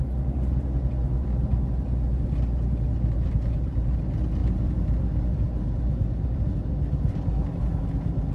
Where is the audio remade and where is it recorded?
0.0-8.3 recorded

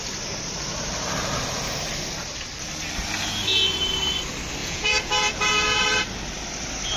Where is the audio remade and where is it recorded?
0.0-4.6 recorded; 4.6-6.0 remade; 6.0-7.0 recorded

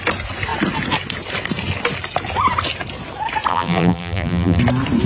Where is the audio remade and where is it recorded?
0.0-3.5 recorded; 3.5-4.6 remade; 4.6-5.1 recorded

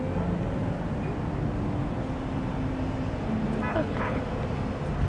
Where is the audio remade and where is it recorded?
0.0-3.7 recorded; 3.7-4.2 remade; 4.2-5.1 recorded

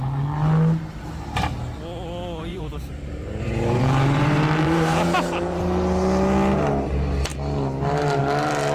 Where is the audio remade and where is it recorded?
0.0-2.5 recorded; 2.5-5.6 remade; 5.6-8.7 recorded

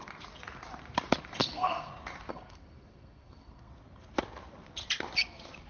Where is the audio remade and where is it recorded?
0.0-1.4 recorded; 1.4-1.9 remade; 1.9-2.3 recorded; 2.3-3.7 remade; 3.7-5.7 recorded

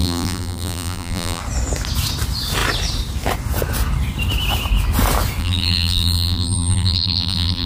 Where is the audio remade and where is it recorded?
0.0-1.4 remade; 1.4-5.4 recorded; 5.4-7.7 remade

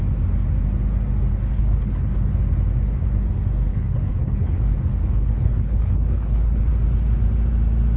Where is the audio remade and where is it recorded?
0.0-1.3 recorded; 1.3-2.3 remade; 2.3-3.7 recorded; 3.7-4.6 remade; 4.6-5.0 recorded; 5.0-6.7 remade; 6.7-8.0 recorded